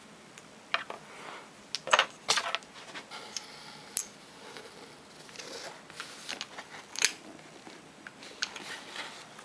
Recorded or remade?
recorded